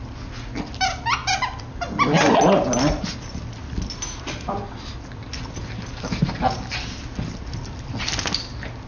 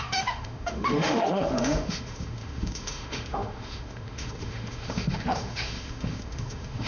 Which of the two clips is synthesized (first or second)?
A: second